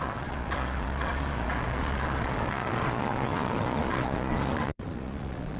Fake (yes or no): yes